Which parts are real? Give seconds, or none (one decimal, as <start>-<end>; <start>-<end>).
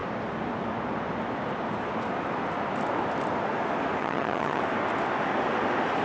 0.0-4.0; 4.6-6.0